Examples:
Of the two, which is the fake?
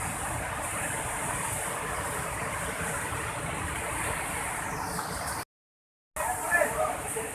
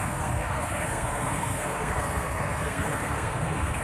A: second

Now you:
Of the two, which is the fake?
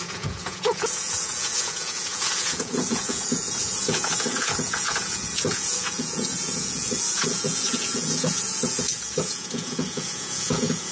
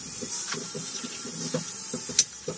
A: first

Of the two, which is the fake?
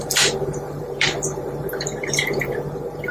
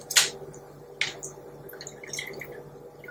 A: first